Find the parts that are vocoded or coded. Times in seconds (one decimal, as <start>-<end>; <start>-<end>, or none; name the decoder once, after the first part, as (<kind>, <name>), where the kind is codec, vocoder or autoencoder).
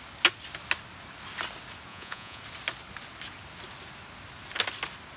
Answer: 1.9-2.4 (vocoder, Vocos)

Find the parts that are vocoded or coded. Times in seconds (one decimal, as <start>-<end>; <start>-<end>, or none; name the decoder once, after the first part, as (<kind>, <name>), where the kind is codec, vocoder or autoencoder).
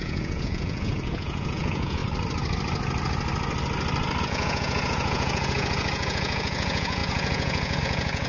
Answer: 0.0-2.0 (vocoder, Vocos); 4.2-8.3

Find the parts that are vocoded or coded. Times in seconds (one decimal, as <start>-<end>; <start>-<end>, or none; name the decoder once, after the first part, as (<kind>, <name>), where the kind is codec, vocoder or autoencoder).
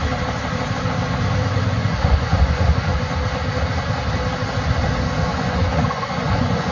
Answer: 1.8-3.1 (vocoder, Vocos); 5.3-6.7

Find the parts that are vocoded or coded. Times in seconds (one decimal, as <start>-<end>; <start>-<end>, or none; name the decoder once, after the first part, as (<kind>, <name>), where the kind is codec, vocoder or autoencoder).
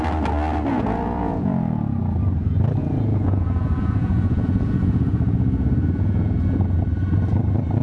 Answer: 0.7-1.5 (vocoder, Vocos); 2.8-6.9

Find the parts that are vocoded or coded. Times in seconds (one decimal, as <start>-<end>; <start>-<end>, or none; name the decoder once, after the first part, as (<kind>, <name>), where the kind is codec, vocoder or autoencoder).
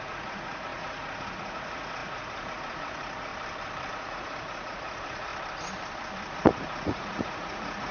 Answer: 0.0-3.3 (vocoder, Vocos); 3.9-5.3; 6.3-7.9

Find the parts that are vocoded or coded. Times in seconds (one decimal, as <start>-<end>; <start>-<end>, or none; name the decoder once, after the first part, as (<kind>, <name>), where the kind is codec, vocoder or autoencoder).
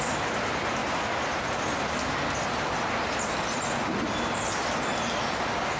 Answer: none